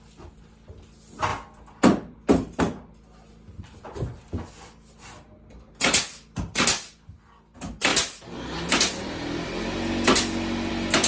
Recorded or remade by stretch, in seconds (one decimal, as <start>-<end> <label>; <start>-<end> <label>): 0.0-3.3 recorded; 3.3-4.2 remade; 4.2-11.1 recorded